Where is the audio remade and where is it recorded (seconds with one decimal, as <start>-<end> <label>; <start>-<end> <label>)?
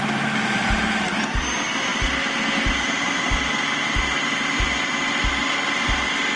0.0-6.4 recorded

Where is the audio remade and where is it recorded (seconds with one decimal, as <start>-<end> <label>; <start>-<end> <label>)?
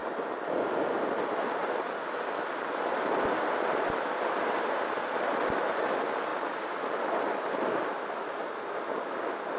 0.0-6.3 recorded; 6.3-8.8 remade; 8.8-9.6 recorded